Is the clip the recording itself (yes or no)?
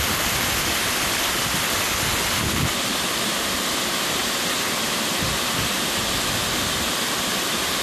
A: yes